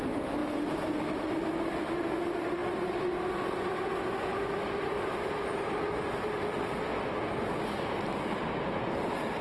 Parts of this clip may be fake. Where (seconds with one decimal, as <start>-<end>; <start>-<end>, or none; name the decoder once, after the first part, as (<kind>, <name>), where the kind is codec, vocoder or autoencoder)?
0.4-1.2 (vocoder, BigVGAN v2); 8.1-8.8